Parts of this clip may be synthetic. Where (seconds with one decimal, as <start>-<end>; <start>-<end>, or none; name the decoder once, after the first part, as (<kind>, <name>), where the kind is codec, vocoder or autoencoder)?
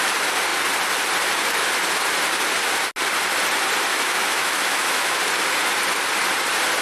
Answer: 3.9-5.2 (autoencoder, DAC-VAE)